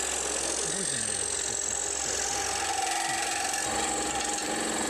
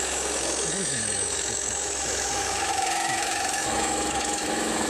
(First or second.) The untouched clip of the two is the first